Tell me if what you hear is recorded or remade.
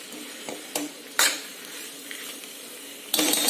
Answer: remade